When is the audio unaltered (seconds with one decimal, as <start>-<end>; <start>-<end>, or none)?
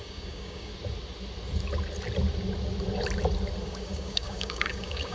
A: 0.7-3.6